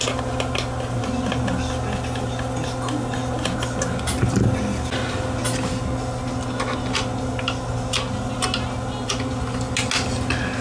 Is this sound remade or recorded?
recorded